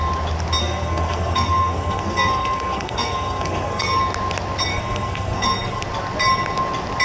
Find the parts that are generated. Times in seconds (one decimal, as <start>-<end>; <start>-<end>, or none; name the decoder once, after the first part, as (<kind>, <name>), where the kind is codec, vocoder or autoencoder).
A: 0.6-4.0 (codec, SNAC); 4.7-5.8